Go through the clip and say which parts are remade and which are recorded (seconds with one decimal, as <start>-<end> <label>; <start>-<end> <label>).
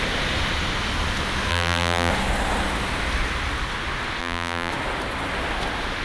0.0-1.5 recorded; 1.5-2.1 remade; 2.1-4.2 recorded; 4.2-4.7 remade; 4.7-6.0 recorded